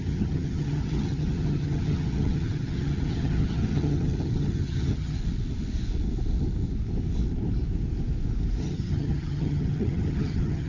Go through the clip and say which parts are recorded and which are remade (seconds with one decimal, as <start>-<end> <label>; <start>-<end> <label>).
0.0-5.2 remade; 5.2-8.6 recorded; 8.6-10.7 remade